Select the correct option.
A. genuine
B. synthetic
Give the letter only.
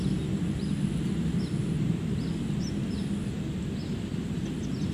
A